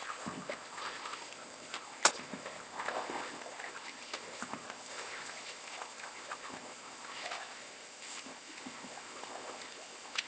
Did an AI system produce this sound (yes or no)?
yes